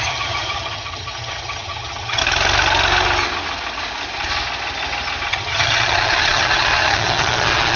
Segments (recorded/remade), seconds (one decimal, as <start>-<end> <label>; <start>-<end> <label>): 0.0-2.2 remade; 2.2-5.3 recorded; 5.3-7.8 remade